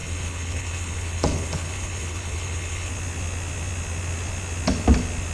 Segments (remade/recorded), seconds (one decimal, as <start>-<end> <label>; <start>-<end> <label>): 0.0-2.9 remade; 2.9-5.3 recorded